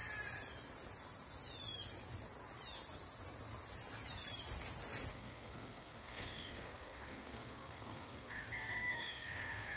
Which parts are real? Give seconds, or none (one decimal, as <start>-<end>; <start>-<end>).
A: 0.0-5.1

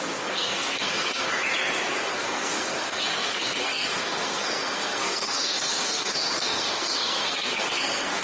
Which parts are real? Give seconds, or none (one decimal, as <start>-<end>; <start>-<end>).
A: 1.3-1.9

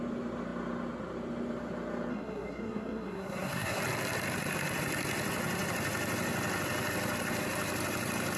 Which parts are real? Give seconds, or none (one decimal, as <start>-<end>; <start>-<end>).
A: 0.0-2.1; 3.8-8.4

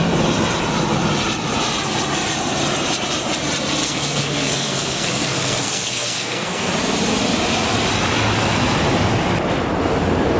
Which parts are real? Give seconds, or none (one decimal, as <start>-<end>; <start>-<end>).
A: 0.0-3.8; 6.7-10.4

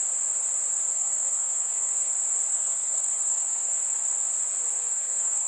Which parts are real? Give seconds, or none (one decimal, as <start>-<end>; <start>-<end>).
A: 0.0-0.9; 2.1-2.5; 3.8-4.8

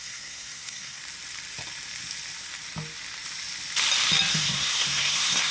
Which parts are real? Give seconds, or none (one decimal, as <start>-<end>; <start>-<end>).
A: 1.0-4.3

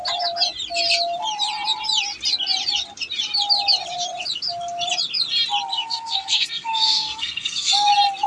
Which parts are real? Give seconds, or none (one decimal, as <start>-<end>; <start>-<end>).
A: 0.0-5.7; 7.7-8.3